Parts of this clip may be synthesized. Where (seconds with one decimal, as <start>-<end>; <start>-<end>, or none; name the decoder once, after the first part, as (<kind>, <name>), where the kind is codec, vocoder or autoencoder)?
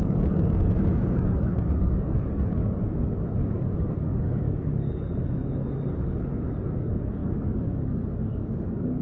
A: 0.0-9.0 (codec, DAC)